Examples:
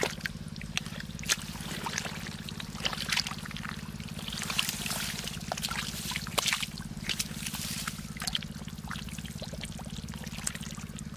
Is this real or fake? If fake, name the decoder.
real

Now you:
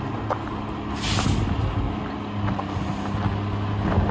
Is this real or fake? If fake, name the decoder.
real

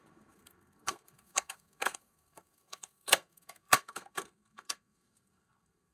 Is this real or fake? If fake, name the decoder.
fake, codec, SNAC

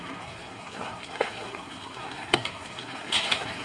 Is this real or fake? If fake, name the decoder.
fake, codec, SNAC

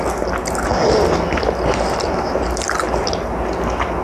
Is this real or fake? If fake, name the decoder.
real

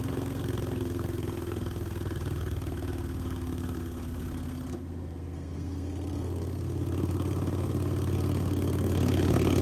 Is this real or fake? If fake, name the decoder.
fake, codec, SNAC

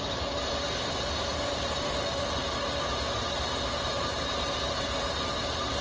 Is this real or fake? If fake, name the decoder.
real